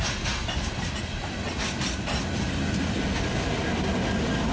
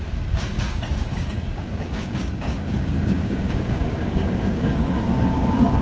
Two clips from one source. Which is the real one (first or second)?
first